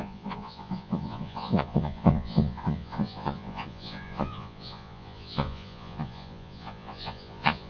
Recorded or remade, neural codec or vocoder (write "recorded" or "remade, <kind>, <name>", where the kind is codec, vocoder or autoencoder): remade, vocoder, Vocos